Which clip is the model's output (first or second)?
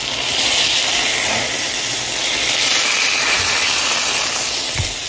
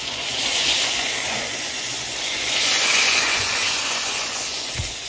second